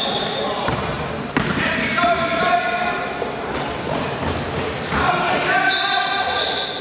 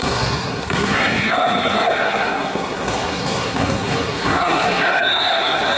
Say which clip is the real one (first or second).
first